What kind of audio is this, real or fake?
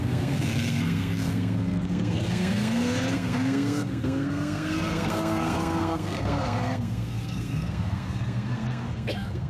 fake